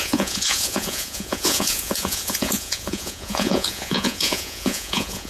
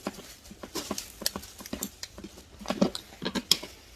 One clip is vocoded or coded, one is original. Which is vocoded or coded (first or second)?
first